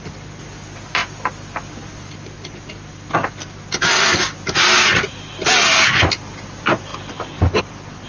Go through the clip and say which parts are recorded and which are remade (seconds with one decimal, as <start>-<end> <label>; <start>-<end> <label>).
0.0-8.1 recorded